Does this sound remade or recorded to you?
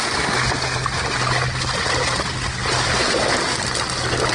recorded